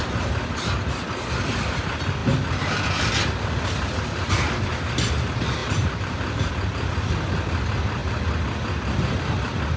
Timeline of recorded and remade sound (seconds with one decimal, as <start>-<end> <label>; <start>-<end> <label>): 0.0-5.6 recorded; 5.6-6.5 remade; 6.5-9.8 recorded